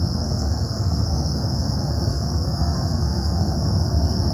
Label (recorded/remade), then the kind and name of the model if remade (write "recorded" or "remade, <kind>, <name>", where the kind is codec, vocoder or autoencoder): remade, codec, SNAC